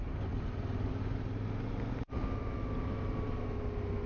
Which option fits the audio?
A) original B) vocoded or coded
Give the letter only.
A